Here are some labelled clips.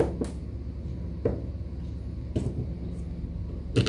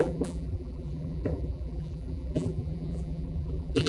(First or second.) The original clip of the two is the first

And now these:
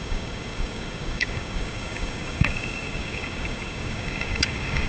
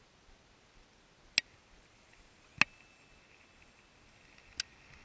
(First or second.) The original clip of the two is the second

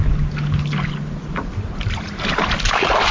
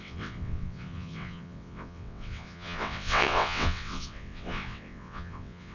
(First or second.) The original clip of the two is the first